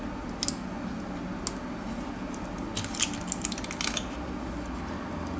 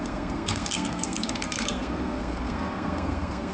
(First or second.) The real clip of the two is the first